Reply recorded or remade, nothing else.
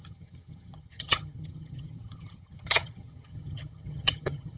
remade